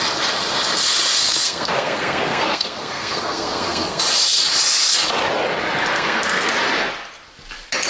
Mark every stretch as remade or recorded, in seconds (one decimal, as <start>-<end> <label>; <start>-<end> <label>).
0.0-1.2 recorded; 1.2-4.0 remade; 4.0-5.9 recorded; 5.9-6.5 remade; 6.5-7.9 recorded